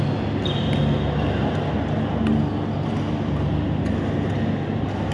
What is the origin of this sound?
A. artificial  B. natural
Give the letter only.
B